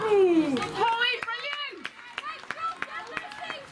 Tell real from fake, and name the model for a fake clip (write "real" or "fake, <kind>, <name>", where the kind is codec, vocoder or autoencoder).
real